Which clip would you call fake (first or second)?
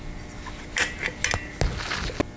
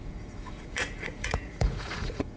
second